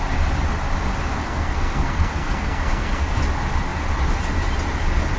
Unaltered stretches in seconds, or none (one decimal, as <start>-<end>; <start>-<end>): 0.0-1.2; 3.2-5.2